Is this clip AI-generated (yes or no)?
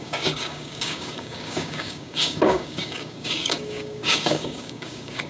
yes